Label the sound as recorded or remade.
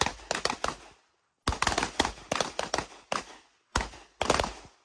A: recorded